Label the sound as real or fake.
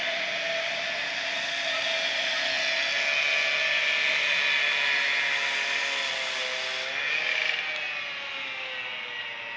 real